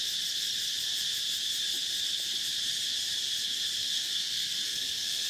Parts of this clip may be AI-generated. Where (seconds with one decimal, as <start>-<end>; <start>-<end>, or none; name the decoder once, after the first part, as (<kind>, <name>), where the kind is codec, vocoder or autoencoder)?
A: 3.8-5.3 (codec, SNAC)